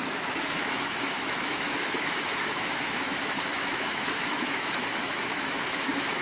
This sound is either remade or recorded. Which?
remade